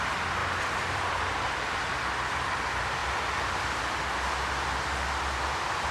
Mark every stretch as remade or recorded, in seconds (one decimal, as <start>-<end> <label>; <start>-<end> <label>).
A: 0.0-0.4 recorded; 0.4-1.1 remade; 1.1-5.9 recorded